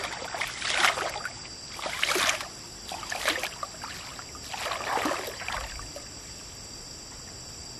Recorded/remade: recorded